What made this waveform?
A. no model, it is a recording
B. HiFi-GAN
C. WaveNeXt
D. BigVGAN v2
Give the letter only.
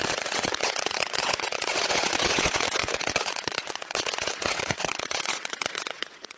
C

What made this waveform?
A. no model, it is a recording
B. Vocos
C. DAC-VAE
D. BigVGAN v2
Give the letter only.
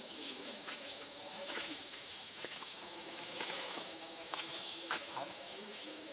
C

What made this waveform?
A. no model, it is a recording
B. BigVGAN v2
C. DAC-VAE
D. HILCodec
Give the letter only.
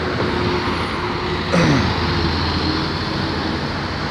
A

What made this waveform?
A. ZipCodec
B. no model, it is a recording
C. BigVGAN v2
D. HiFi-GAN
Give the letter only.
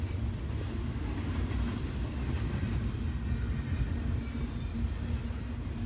B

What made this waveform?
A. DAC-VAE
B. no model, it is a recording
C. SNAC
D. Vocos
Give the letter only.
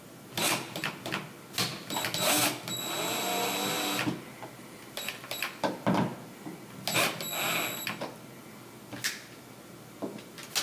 B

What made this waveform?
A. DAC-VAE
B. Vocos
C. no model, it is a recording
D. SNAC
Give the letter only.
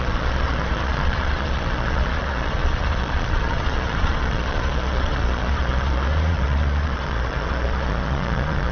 B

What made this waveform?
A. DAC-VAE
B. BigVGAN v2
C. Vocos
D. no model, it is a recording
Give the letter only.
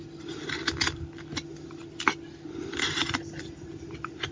D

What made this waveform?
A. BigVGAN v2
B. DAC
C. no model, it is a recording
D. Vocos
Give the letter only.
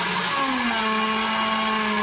C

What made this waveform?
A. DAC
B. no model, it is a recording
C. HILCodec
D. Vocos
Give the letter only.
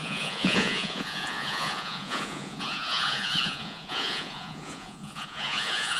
D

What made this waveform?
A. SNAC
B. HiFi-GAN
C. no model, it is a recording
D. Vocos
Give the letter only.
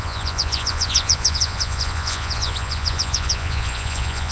D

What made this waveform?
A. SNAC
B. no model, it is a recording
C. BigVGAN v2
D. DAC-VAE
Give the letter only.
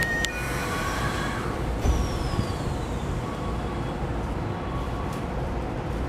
C